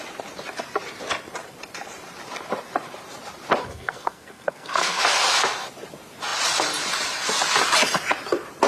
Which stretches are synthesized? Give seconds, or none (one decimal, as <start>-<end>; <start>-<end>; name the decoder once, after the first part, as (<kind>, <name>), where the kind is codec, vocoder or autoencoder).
3.6-5.0 (codec, SNAC)